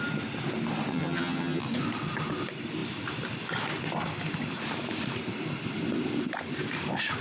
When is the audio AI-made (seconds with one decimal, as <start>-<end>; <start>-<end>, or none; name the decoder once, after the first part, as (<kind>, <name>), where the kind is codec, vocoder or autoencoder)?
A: 0.9-1.6 (vocoder, HiFi-GAN)